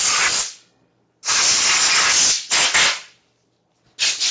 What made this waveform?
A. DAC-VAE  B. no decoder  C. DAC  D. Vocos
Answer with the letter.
B